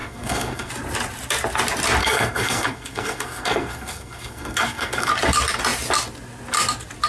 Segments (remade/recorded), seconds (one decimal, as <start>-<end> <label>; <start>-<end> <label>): 0.0-0.7 remade; 0.7-2.0 recorded; 2.0-5.1 remade; 5.1-7.1 recorded